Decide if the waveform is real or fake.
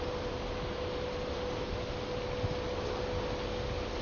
real